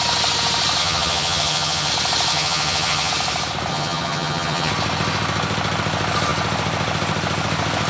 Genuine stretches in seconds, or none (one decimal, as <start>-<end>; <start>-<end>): 0.0-0.8; 1.9-2.3; 3.1-3.7; 4.7-7.9